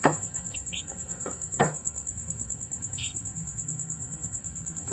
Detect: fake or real fake